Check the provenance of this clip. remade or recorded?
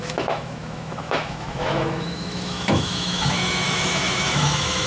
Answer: remade